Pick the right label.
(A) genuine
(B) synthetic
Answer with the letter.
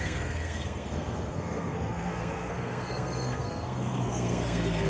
B